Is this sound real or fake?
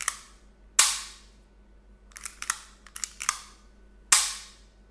real